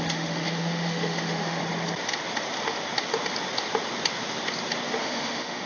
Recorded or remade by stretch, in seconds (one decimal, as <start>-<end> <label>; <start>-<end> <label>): 0.0-1.6 remade; 1.6-5.0 recorded; 5.0-5.7 remade